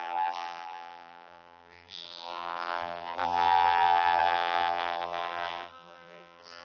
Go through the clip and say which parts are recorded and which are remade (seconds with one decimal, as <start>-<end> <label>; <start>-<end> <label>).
0.0-6.6 remade

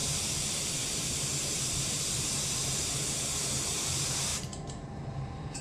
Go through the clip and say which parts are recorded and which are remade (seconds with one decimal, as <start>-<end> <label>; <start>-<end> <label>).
0.0-3.0 remade; 3.0-4.3 recorded; 4.3-5.6 remade

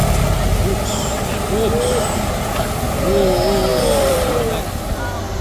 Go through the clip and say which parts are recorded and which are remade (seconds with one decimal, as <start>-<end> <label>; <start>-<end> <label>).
0.0-3.7 recorded; 3.7-4.4 remade; 4.4-5.4 recorded

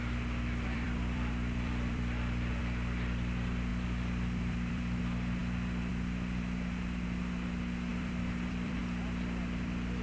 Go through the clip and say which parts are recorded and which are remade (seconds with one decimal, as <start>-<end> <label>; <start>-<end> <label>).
0.0-2.6 remade; 2.6-3.7 recorded; 3.7-5.0 remade; 5.0-7.9 recorded; 7.9-8.8 remade; 8.8-10.0 recorded

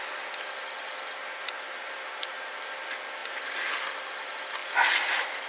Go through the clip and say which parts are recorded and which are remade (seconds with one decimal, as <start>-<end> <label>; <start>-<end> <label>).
0.0-0.8 recorded; 0.8-2.4 remade; 2.4-3.2 recorded; 3.2-3.7 remade; 3.7-5.5 recorded

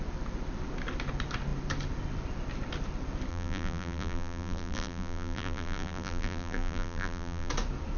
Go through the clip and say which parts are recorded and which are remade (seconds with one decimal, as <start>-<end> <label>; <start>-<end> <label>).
0.0-3.3 recorded; 3.3-7.5 remade; 7.5-8.0 recorded